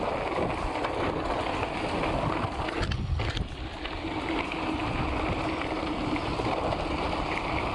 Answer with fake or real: real